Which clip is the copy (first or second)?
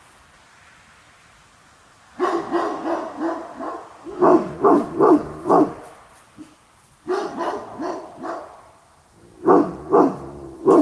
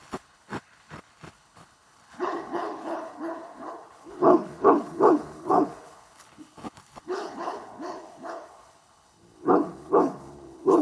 second